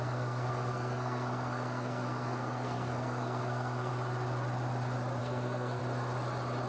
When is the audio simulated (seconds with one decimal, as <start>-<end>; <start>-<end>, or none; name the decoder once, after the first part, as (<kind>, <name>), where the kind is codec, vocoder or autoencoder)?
0.0-3.9 (codec, SNAC); 5.2-5.8